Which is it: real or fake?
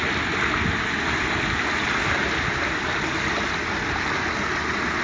real